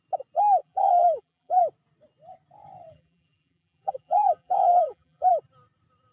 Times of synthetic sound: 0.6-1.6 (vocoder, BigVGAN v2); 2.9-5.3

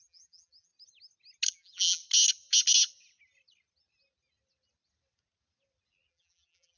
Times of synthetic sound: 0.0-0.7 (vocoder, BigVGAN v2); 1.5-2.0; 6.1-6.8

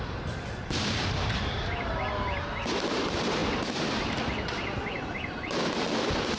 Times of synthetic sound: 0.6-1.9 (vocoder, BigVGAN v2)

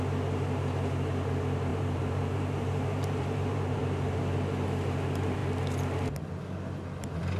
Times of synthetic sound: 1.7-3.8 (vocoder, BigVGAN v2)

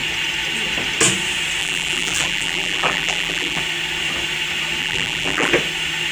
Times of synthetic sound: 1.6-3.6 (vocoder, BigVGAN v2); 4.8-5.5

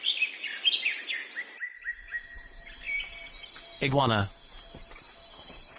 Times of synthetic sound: none

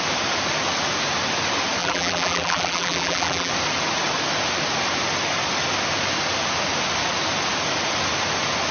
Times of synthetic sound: 1.8-3.5 (vocoder, BigVGAN v2)